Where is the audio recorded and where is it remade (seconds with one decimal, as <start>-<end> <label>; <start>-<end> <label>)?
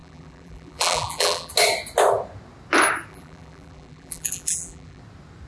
0.0-1.5 remade; 1.5-3.1 recorded; 3.1-5.0 remade; 5.0-5.5 recorded